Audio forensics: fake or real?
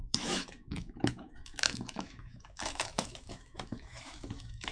fake